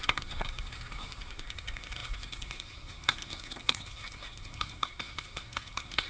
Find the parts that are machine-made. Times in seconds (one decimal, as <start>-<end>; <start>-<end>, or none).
0.0-6.1